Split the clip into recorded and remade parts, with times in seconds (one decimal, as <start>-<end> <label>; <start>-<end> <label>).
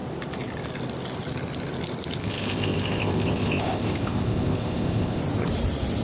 0.0-2.2 recorded; 2.2-5.2 remade; 5.2-6.0 recorded